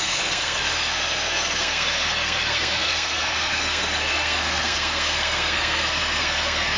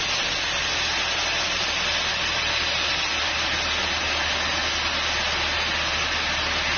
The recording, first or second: second